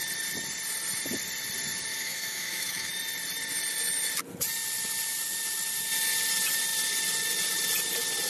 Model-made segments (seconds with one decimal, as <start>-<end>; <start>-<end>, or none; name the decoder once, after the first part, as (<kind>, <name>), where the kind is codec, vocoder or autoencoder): 1.9-2.9 (autoencoder, DAC-VAE)